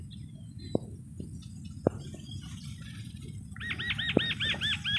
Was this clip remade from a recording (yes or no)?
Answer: no